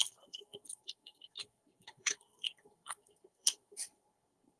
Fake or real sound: fake